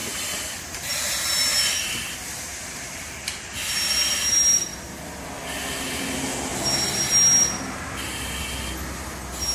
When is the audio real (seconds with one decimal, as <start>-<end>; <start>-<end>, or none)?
1.5-4.7; 5.3-9.5